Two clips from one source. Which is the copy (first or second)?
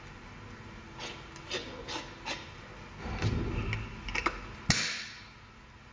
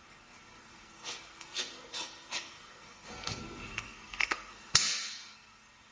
second